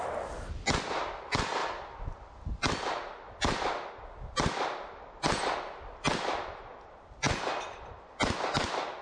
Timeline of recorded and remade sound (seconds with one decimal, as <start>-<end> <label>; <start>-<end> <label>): 0.0-9.0 recorded